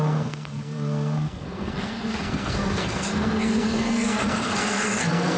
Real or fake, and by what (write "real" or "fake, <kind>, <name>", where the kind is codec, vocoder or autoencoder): fake, codec, SNAC